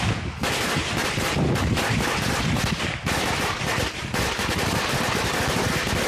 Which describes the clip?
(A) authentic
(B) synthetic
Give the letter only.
A